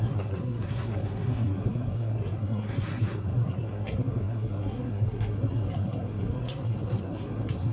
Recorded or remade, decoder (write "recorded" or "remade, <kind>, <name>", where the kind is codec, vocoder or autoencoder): remade, codec, SNAC